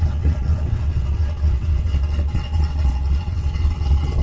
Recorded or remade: remade